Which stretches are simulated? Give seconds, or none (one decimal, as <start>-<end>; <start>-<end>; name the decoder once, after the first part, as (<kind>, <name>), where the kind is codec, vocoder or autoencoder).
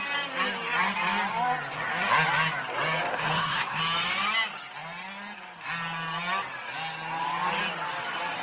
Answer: 3.1-3.8 (codec, SNAC)